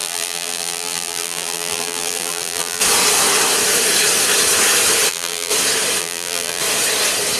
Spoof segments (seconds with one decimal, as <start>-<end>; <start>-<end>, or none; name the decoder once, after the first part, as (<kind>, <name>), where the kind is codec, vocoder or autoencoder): 0.0-2.8 (vocoder, BigVGAN v2); 5.1-5.5; 6.0-6.6